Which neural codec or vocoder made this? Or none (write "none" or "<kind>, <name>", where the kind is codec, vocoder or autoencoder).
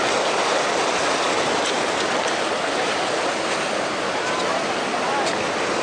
none